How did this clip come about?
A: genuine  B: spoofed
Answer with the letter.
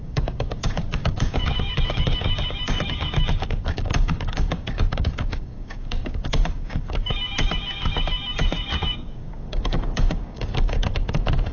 B